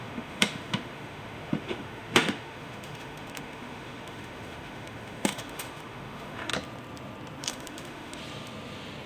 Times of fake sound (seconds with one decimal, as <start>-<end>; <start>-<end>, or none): 0.0-6.5; 7.4-8.2